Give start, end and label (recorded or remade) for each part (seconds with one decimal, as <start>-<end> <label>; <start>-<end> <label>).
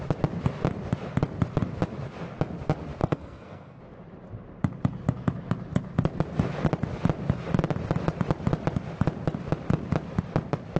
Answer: 0.0-3.0 recorded; 3.0-3.8 remade; 3.8-10.8 recorded